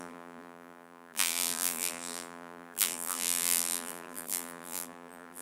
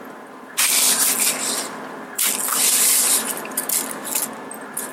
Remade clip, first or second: first